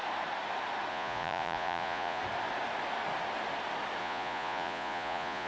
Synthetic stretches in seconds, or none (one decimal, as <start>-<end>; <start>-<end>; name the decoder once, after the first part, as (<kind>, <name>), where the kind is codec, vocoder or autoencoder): 0.9-2.2 (vocoder, Vocos); 4.0-5.5